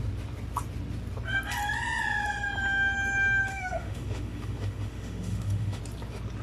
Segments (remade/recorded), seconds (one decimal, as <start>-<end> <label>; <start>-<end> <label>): 0.0-3.5 recorded; 3.5-5.8 remade; 5.8-6.4 recorded